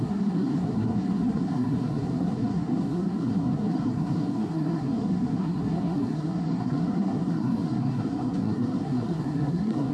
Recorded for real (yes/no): no